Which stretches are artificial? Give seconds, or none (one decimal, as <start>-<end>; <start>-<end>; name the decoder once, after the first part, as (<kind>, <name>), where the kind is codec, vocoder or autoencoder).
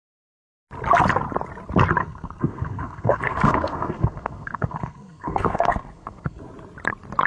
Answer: 2.0-6.4 (codec, SNAC)